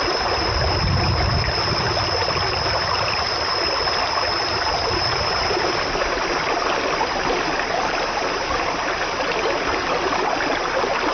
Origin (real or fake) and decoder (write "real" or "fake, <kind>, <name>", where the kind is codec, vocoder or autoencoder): real